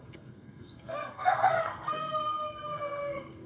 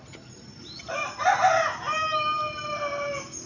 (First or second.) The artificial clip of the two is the first